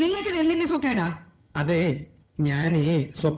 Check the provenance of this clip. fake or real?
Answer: fake